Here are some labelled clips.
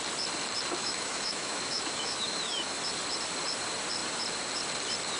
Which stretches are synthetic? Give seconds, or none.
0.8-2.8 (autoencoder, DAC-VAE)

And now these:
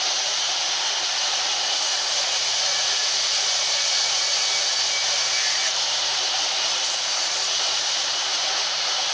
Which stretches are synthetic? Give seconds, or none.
0.0-4.4 (vocoder, Vocos); 6.1-9.1

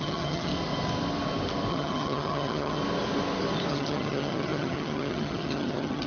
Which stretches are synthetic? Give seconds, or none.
0.0-0.5 (vocoder, HiFi-GAN); 1.7-2.8; 3.7-6.1